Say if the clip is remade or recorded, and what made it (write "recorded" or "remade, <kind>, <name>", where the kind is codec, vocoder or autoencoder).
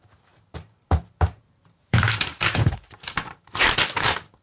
remade, vocoder, BigVGAN v2